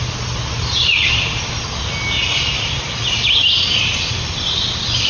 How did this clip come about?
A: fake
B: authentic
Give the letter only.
B